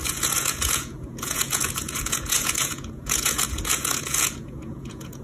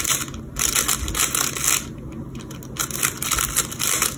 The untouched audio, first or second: second